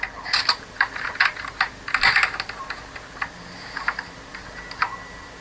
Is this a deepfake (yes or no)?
no